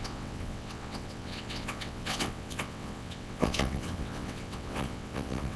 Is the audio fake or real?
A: fake